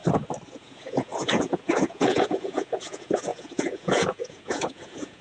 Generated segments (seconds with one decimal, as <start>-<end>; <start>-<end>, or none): 0.5-5.2